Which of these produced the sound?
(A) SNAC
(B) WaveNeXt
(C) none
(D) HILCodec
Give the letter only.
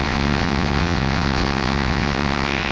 B